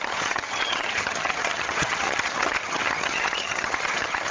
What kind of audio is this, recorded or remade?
remade